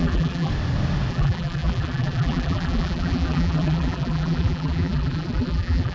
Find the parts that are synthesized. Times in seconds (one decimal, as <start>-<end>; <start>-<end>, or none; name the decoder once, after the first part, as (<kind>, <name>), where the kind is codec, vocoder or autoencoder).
0.0-0.5 (vocoder, BigVGAN v2); 1.1-5.9